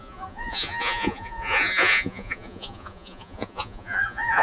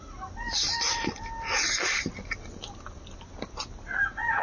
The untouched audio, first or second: second